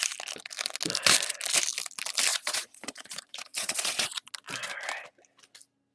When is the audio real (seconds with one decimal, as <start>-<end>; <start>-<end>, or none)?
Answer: 0.0-2.3; 4.3-5.9